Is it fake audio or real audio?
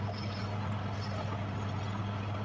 real